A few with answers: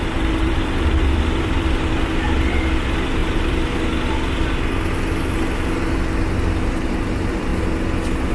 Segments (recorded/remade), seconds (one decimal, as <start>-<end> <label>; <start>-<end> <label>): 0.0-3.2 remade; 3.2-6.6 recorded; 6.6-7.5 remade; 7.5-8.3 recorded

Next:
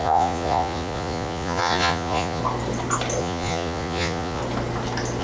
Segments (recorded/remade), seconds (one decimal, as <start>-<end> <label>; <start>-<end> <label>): 0.0-2.4 remade; 2.4-3.2 recorded; 3.2-4.4 remade; 4.4-5.2 recorded

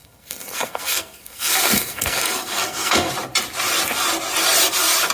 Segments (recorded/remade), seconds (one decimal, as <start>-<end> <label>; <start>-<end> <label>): 0.0-3.1 remade; 3.1-5.1 recorded

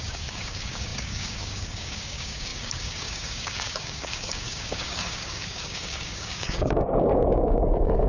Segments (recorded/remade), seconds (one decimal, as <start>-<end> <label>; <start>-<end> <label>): 0.0-8.1 remade

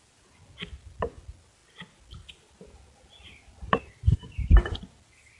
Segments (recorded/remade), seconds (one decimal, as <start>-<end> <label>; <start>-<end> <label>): 0.0-5.4 recorded

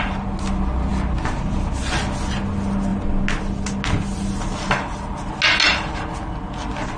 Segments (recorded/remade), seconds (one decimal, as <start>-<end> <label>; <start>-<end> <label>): 0.0-7.0 recorded